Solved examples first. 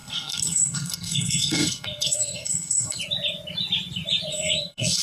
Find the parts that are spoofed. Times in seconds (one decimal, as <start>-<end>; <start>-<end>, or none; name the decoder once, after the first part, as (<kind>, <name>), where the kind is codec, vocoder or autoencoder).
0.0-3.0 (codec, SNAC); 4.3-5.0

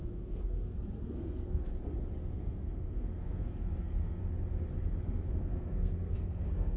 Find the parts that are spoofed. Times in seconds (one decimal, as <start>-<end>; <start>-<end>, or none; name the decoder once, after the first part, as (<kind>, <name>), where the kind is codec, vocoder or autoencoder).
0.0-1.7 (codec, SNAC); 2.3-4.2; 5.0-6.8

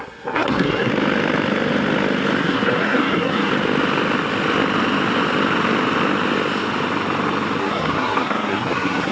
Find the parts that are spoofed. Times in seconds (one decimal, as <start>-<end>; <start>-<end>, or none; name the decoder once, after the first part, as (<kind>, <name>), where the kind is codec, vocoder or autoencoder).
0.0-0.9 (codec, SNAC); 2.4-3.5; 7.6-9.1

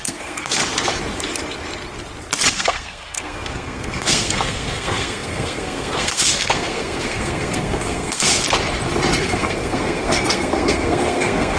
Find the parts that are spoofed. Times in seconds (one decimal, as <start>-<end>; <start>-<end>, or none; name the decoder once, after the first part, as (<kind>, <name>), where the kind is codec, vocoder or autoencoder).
0.0-0.6 (codec, SNAC); 2.5-8.3; 9.2-11.6

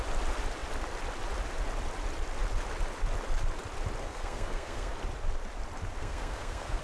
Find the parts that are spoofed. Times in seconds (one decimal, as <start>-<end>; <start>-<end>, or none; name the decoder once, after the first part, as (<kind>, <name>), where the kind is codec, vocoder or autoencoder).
4.0-4.9 (codec, SNAC); 6.0-6.8

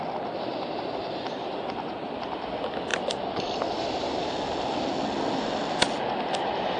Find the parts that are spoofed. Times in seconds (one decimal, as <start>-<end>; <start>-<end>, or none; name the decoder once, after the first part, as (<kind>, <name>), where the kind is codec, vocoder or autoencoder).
none